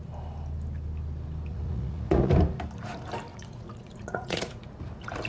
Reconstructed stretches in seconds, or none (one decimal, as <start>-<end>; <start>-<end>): 1.5-2.3; 3.3-4.7